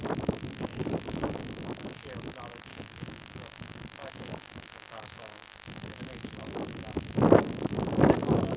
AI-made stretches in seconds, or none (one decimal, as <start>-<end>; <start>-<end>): 0.8-1.4; 2.7-6.0